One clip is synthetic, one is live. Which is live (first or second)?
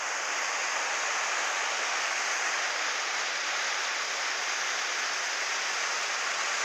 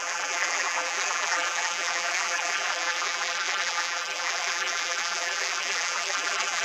first